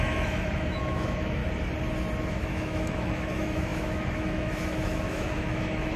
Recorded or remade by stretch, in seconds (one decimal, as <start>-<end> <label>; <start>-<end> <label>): 0.0-1.4 remade; 1.4-2.2 recorded; 2.2-6.0 remade